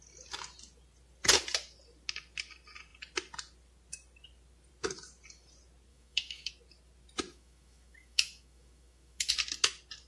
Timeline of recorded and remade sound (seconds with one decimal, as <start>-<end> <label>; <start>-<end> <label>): 0.0-5.9 recorded; 5.9-6.5 remade; 6.5-7.3 recorded; 7.3-9.3 remade; 9.3-10.1 recorded